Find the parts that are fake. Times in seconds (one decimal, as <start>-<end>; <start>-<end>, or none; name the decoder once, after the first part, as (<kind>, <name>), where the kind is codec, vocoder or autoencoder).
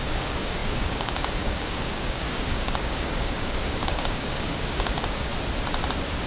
0.0-5.3 (codec, DAC)